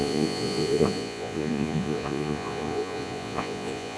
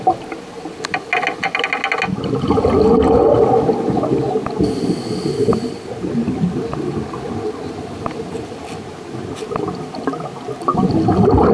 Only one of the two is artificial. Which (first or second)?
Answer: first